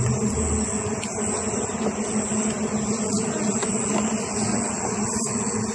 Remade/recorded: recorded